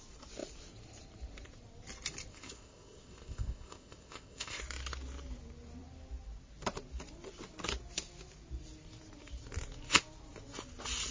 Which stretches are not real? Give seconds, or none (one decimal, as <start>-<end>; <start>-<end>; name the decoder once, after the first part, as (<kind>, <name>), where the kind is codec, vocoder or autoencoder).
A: 2.3-4.6 (codec, ZipCodec)